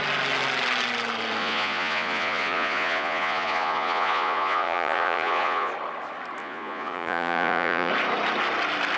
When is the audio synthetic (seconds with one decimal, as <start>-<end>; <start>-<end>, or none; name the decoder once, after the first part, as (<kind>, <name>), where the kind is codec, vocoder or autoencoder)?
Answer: 1.4-5.7 (vocoder, Vocos); 6.4-7.9